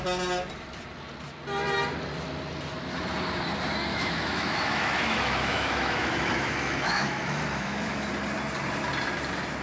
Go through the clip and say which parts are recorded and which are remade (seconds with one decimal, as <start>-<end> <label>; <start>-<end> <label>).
0.0-3.9 recorded; 3.9-8.1 remade; 8.1-9.6 recorded